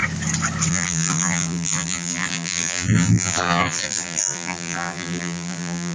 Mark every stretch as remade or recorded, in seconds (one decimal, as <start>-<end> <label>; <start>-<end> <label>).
0.0-0.7 recorded; 0.7-5.9 remade